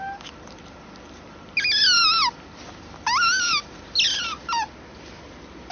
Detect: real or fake real